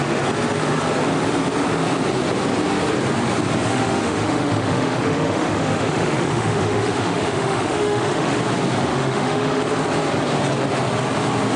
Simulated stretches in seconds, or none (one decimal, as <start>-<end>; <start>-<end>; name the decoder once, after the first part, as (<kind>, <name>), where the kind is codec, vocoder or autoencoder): 3.7-8.4 (autoencoder, DAC-VAE); 8.9-9.6

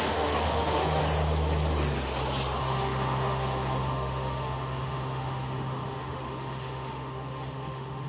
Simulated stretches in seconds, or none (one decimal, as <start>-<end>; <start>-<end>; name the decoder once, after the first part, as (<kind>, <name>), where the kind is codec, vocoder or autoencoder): 0.0-1.0 (autoencoder, DAC-VAE); 2.6-8.1